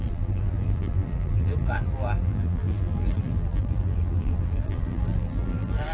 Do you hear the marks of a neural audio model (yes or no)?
yes